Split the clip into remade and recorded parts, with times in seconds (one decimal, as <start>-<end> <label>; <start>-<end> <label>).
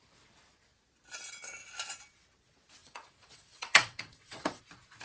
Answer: 0.0-2.8 recorded; 2.8-4.6 remade; 4.6-5.0 recorded